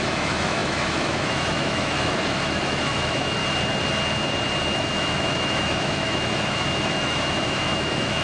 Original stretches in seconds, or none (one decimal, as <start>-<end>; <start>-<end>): 3.4-4.6